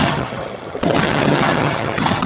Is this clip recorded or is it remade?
remade